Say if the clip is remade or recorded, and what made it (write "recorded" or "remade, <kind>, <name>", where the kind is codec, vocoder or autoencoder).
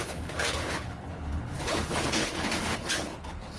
remade, codec, HILCodec